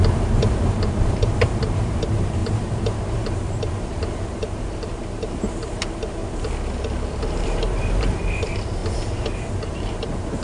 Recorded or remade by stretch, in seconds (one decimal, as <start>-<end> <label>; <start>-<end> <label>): 0.0-6.2 remade; 6.2-7.2 recorded; 7.2-8.8 remade; 8.8-9.6 recorded; 9.6-10.4 remade